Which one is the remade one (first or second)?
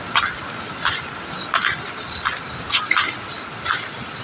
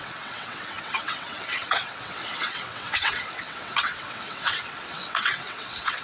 second